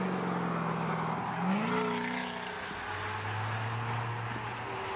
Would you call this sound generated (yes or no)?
no